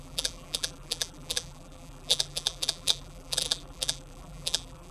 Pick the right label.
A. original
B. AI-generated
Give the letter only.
B